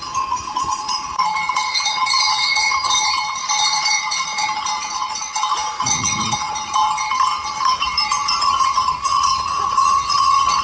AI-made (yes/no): yes